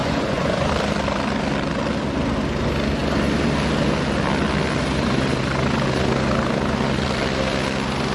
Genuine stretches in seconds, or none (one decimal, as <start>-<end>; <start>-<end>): 0.7-8.1